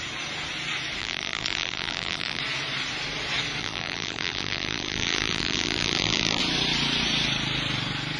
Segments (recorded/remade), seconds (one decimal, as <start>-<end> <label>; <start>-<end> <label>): 0.0-1.0 recorded; 1.0-2.4 remade; 2.4-3.6 recorded; 3.6-6.4 remade; 6.4-8.2 recorded